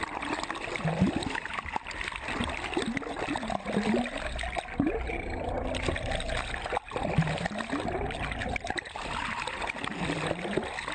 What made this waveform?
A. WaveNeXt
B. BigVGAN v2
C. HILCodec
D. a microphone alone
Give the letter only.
D